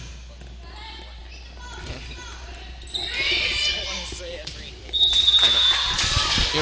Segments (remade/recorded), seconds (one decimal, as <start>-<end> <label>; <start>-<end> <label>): 0.0-6.6 recorded